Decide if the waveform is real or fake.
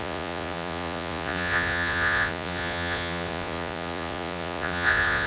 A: fake